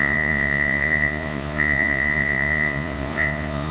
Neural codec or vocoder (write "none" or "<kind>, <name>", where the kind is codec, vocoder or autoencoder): vocoder, Vocos